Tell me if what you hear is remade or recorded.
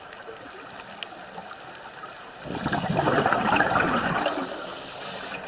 recorded